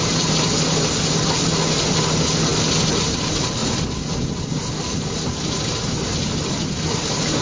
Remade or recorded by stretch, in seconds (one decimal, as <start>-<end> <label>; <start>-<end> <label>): 0.0-7.4 recorded